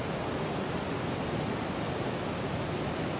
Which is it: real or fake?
real